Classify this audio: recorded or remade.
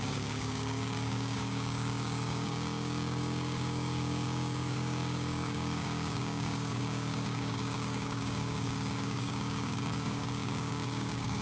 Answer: remade